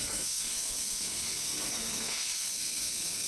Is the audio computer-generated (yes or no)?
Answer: yes